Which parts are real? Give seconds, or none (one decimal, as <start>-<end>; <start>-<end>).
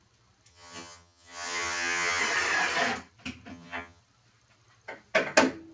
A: 0.0-0.5; 2.2-3.5; 4.0-5.7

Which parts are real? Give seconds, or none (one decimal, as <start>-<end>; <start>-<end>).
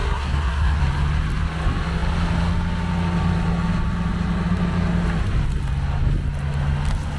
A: 0.8-7.2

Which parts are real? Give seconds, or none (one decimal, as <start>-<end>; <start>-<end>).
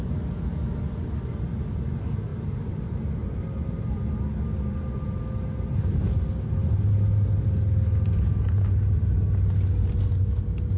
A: 0.0-2.3; 2.9-10.8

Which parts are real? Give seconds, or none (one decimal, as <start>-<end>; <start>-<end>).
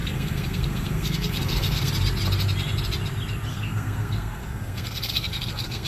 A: 1.9-3.5